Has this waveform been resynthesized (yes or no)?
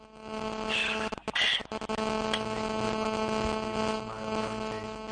no